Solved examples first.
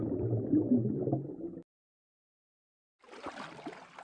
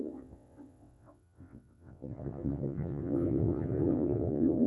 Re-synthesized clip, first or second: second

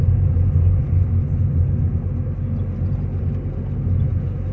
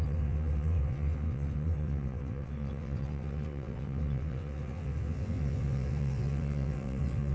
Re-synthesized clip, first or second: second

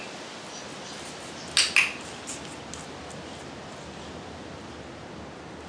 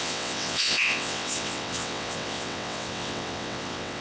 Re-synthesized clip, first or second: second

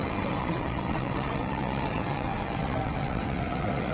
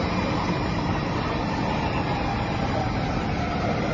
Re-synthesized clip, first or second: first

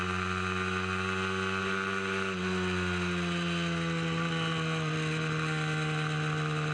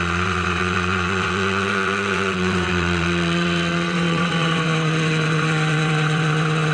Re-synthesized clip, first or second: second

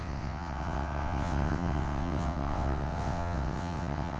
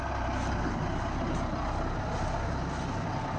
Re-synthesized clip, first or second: first